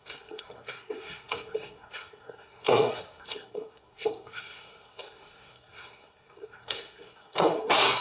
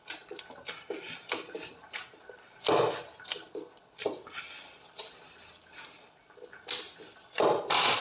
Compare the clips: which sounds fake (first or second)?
first